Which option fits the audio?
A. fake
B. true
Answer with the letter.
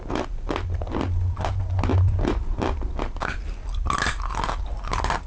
B